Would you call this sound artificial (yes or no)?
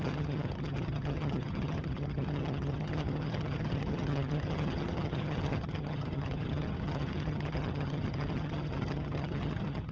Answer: yes